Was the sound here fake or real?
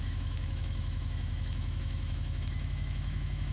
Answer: fake